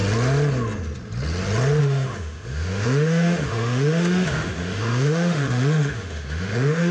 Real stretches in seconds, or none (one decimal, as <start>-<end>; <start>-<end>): 0.0-1.8